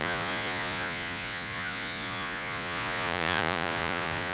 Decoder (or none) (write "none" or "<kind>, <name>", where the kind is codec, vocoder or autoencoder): vocoder, Vocos